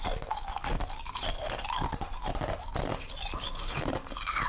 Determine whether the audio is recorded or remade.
recorded